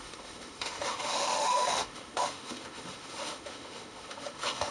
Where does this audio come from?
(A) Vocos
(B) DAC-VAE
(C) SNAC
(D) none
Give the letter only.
B